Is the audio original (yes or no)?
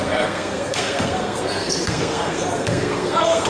no